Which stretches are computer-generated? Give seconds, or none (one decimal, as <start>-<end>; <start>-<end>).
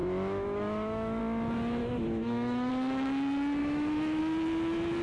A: 0.0-1.2; 1.8-2.7; 3.6-4.2